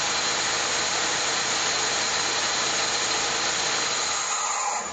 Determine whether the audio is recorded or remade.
recorded